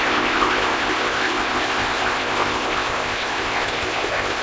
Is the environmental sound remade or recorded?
remade